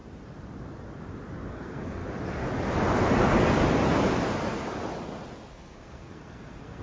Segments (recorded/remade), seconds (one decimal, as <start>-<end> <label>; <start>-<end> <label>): 0.0-1.5 recorded; 1.5-2.0 remade; 2.0-5.5 recorded; 5.5-6.8 remade

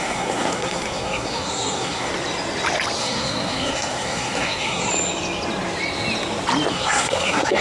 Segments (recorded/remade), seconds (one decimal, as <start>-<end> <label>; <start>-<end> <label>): 0.0-2.1 remade; 2.1-3.0 recorded; 3.0-4.9 remade; 4.9-6.7 recorded; 6.7-7.6 remade

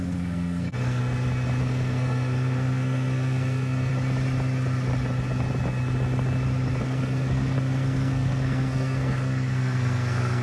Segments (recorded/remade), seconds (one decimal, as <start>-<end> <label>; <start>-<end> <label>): 0.0-1.0 remade; 1.0-1.6 recorded; 1.6-3.9 remade; 3.9-6.8 recorded; 6.8-10.4 remade

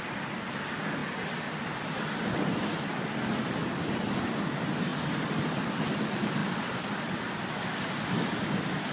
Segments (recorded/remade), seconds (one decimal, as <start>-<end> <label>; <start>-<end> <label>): 0.0-8.9 recorded

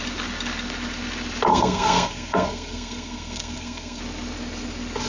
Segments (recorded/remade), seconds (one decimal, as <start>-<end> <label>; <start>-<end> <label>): 0.0-1.5 recorded; 1.5-4.0 remade; 4.0-5.1 recorded

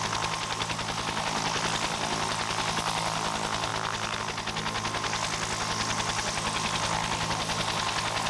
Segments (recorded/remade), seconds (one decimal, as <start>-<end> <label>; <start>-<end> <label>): 0.0-8.3 recorded

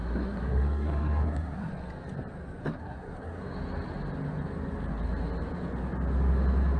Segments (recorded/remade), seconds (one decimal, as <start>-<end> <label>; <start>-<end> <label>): 0.0-1.7 remade; 1.7-2.6 recorded; 2.6-3.4 remade; 3.4-6.8 recorded